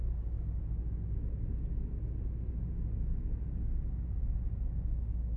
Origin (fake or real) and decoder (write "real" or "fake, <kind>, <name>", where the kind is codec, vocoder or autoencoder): real